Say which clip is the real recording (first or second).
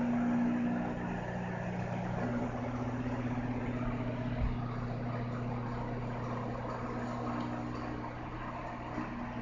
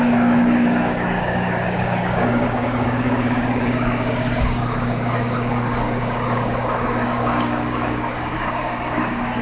first